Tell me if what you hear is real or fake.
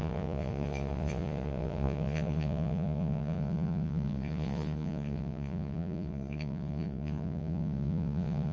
fake